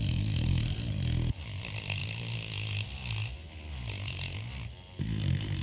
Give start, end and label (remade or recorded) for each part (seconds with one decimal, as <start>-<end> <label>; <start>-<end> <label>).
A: 0.0-5.6 recorded